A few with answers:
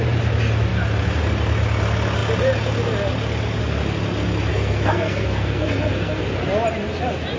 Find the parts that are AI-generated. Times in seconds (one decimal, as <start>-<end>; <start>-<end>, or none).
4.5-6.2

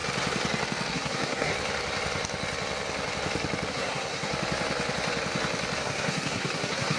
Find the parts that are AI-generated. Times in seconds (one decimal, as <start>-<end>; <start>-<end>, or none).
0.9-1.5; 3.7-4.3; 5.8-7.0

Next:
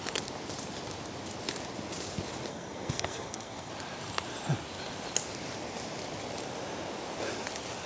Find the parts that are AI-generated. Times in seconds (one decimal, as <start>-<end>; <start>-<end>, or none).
2.5-3.7

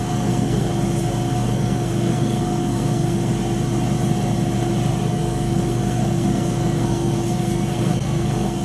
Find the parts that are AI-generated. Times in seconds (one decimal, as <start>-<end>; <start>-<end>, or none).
0.0-0.7; 1.3-3.3; 5.1-8.6

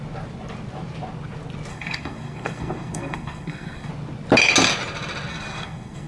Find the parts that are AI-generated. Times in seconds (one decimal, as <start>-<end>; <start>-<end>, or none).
1.7-3.9; 5.3-6.1